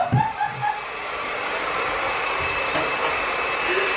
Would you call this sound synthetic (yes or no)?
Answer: no